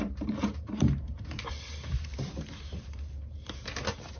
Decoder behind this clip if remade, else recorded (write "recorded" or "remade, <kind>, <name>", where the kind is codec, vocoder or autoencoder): remade, vocoder, BigVGAN v2